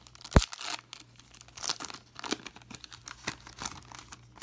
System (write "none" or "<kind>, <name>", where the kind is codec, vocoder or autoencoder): none